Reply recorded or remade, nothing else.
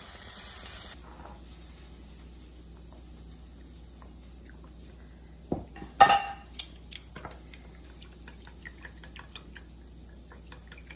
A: recorded